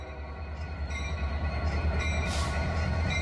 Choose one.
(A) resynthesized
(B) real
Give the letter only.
A